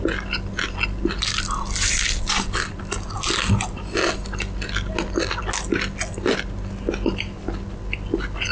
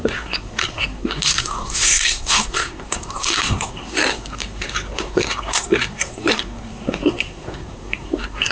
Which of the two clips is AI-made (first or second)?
second